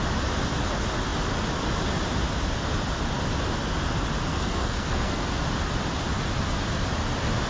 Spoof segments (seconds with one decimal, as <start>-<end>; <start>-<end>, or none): 4.3-5.2